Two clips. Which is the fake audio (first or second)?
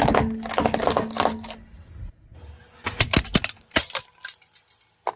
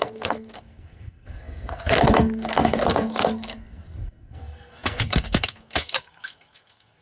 second